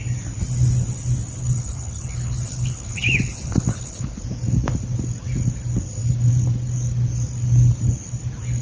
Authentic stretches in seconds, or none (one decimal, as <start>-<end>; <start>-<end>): 0.0-1.4; 4.2-8.6